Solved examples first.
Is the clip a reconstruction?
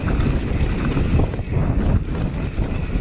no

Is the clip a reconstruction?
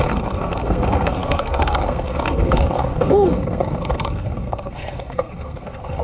yes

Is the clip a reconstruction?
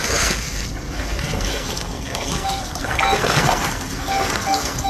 yes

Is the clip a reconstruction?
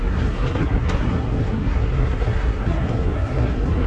yes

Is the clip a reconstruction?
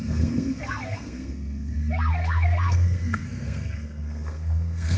yes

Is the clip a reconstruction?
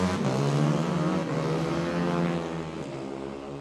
no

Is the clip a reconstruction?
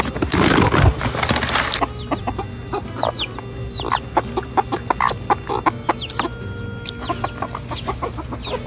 no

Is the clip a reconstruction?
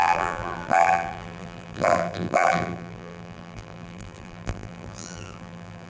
yes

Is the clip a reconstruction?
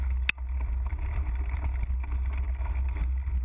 no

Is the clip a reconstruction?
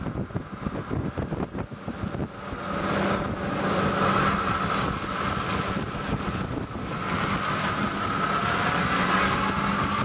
no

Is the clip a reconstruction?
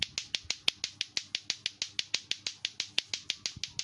no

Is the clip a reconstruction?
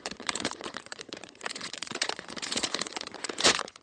yes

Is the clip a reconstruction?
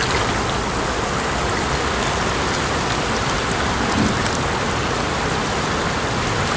no